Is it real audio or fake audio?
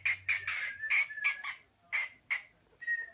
real